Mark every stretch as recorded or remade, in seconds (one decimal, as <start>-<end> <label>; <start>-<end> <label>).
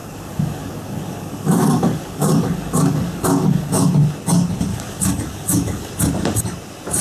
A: 0.0-3.9 remade; 3.9-4.7 recorded; 4.7-5.9 remade; 5.9-7.0 recorded